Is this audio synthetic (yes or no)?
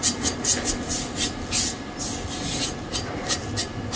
no